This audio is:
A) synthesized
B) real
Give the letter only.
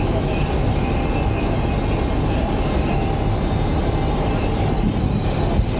B